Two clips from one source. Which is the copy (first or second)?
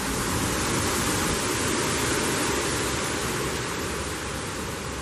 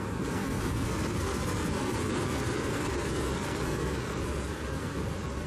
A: second